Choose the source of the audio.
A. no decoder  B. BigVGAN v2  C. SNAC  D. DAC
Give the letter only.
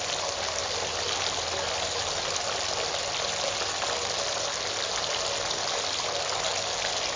A